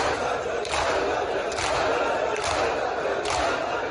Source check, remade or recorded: recorded